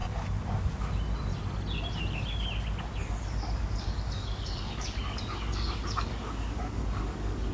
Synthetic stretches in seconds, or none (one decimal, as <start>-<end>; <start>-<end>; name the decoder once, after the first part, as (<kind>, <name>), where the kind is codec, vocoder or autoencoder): 3.0-7.5 (codec, DAC)